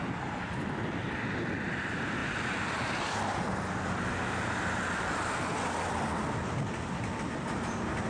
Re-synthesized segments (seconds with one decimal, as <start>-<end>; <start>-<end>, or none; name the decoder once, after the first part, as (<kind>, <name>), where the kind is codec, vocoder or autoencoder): none

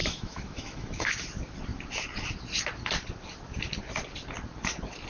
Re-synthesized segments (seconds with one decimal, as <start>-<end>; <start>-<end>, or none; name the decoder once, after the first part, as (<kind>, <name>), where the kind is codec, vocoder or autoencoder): 0.0-1.1 (autoencoder, DAC-VAE)

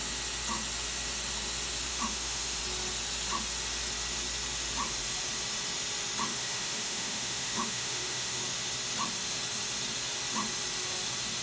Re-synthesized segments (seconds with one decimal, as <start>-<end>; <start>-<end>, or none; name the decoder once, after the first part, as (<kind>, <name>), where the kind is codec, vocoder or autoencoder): 1.9-2.6 (autoencoder, DAC-VAE); 6.3-8.4

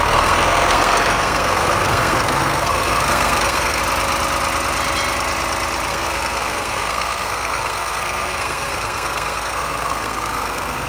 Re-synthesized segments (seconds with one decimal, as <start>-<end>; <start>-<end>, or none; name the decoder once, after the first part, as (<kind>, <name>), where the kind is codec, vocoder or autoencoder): 0.0-3.8 (codec, SNAC); 5.9-10.9

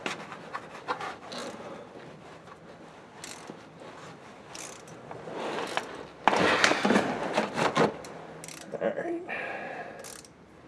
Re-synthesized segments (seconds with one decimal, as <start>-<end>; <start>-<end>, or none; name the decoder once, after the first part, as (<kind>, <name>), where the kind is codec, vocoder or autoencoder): none

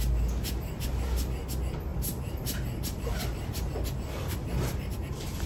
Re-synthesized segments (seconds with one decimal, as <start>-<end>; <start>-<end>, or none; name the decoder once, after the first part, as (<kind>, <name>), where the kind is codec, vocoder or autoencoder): 1.9-5.5 (vocoder, BigVGAN v2)